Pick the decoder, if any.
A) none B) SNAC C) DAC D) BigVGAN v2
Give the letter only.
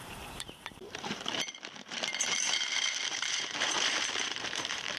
D